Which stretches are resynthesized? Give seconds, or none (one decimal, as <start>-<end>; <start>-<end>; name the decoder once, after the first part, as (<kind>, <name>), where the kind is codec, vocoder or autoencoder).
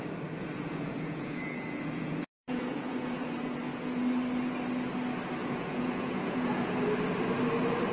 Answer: 0.4-4.0 (vocoder, Vocos); 5.4-6.7